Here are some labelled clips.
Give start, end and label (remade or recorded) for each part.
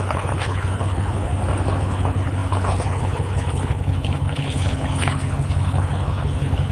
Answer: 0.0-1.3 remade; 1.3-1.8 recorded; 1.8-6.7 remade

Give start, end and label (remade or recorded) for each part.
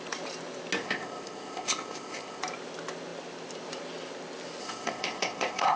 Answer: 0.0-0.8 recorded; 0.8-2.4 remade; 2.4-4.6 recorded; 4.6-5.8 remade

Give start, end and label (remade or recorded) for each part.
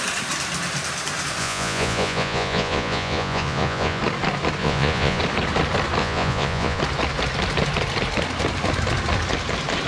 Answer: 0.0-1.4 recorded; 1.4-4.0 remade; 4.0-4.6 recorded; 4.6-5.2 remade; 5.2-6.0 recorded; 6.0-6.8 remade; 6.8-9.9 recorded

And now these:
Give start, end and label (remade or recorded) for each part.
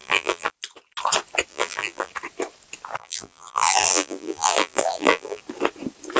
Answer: 0.0-0.5 remade; 0.5-1.5 recorded; 1.5-2.1 remade; 2.1-3.0 recorded; 3.0-5.4 remade; 5.4-6.2 recorded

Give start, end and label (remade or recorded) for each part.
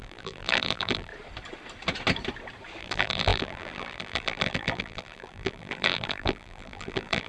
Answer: 0.0-1.1 remade; 1.1-2.8 recorded; 2.8-7.3 remade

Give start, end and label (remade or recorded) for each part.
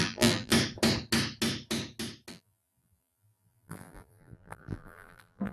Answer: 0.0-0.5 remade; 0.5-2.3 recorded; 2.3-5.5 remade